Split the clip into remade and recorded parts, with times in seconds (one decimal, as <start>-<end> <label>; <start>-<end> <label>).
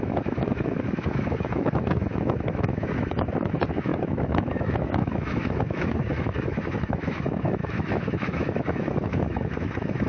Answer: 0.0-10.1 remade